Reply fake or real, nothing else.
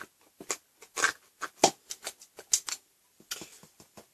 real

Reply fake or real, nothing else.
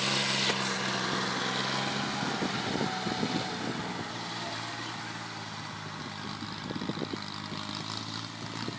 real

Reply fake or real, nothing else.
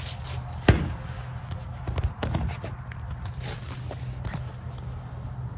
real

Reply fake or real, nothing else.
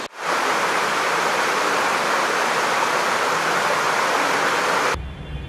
real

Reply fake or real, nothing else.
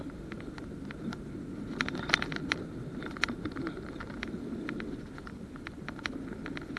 real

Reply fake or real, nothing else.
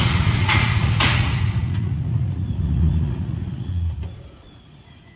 fake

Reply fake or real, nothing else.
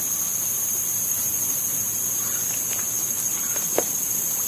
real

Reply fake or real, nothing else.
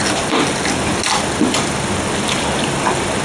real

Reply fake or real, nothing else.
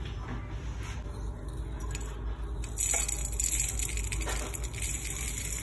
real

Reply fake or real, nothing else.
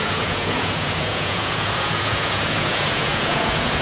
fake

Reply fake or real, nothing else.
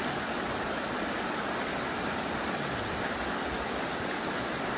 real